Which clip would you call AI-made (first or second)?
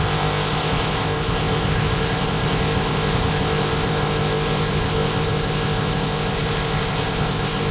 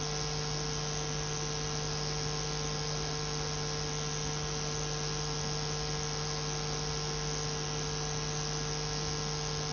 first